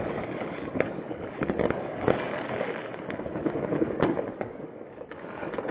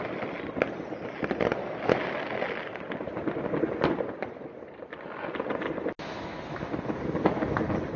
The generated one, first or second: first